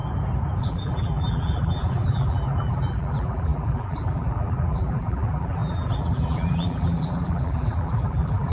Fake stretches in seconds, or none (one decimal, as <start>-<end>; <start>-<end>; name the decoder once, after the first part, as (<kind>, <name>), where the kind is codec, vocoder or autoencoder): 0.6-8.5 (vocoder, BigVGAN v2)